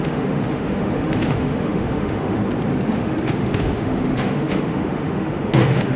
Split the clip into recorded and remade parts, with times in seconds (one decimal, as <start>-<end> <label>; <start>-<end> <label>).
0.0-2.4 remade; 2.4-2.9 recorded; 2.9-6.0 remade